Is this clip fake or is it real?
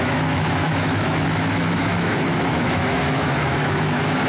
fake